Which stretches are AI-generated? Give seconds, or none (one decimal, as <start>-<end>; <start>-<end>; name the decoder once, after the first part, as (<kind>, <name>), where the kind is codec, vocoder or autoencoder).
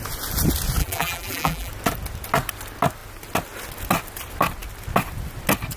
0.8-1.7 (vocoder, BigVGAN v2)